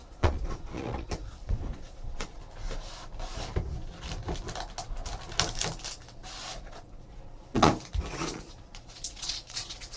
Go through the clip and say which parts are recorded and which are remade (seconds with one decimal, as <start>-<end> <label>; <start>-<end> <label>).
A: 0.0-2.4 remade; 2.4-6.6 recorded; 6.6-7.7 remade; 7.7-8.2 recorded; 8.2-10.0 remade